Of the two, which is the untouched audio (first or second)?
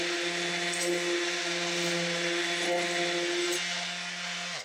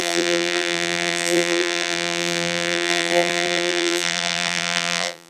first